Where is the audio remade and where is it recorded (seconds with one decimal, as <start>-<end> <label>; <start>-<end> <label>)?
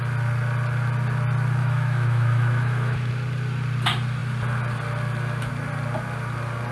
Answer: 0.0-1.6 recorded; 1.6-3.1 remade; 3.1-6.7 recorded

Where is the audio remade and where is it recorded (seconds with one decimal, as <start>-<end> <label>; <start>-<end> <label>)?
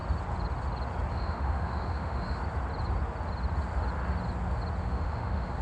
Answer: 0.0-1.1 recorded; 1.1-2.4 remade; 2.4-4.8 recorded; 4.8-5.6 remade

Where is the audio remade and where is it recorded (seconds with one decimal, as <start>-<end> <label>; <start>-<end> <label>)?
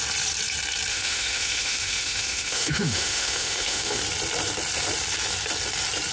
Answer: 0.0-0.9 recorded; 0.9-4.0 remade; 4.0-6.1 recorded